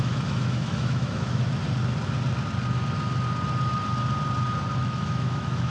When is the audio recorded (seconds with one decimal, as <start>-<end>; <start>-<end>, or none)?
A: 1.4-4.8

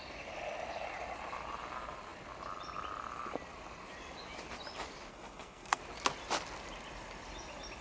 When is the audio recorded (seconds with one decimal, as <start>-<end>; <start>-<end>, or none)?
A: 0.0-5.1; 5.8-7.8

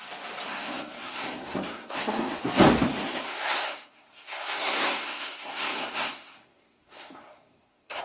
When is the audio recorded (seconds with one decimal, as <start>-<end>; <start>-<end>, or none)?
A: 0.0-0.5; 2.4-3.0

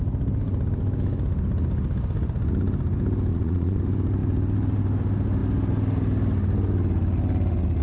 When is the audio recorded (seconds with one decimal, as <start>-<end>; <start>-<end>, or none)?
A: 0.0-3.3; 3.8-7.8

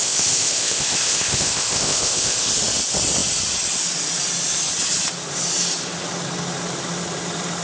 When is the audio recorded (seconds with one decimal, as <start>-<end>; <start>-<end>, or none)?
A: 2.5-7.6